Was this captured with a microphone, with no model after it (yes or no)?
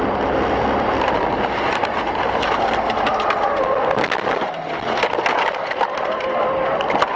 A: yes